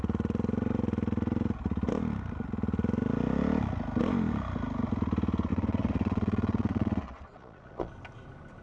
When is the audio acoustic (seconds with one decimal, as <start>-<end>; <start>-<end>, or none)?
0.0-5.5; 7.9-8.6